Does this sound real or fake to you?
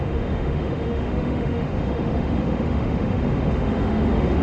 fake